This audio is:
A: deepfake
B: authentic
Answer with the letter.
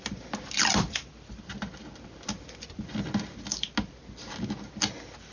B